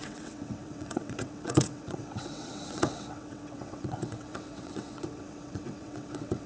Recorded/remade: remade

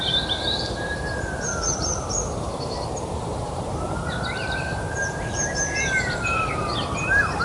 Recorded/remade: remade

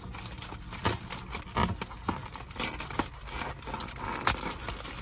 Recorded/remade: recorded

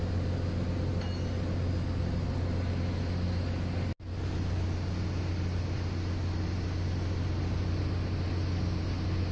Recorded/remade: recorded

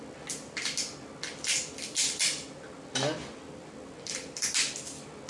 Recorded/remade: recorded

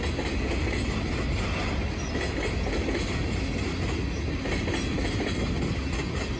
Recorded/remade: recorded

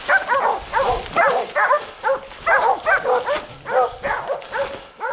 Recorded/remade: recorded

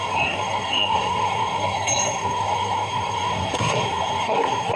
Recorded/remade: remade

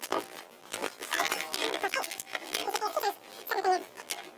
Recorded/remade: remade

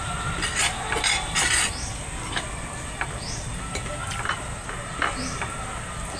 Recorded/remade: recorded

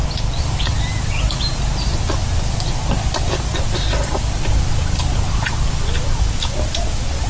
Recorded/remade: recorded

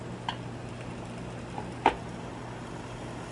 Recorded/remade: recorded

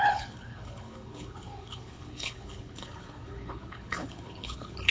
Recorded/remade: remade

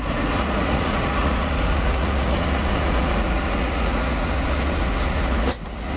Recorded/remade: remade